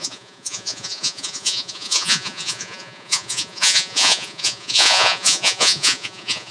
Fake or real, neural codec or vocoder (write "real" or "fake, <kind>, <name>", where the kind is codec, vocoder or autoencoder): fake, vocoder, Vocos